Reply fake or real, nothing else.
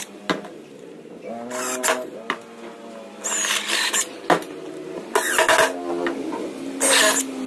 real